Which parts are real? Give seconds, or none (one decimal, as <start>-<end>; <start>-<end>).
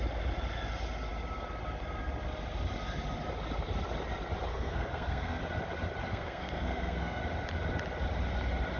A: 0.0-4.5; 5.4-6.1; 7.2-8.8